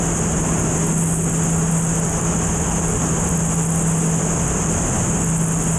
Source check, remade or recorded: recorded